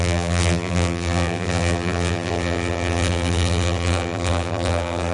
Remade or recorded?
remade